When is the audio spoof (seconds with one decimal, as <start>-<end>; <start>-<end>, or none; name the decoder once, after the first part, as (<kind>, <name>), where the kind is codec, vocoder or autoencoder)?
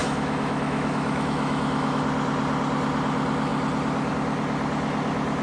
0.0-2.0 (autoencoder, DAC-VAE)